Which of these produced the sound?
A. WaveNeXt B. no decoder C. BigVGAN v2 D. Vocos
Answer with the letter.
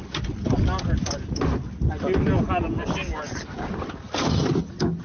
B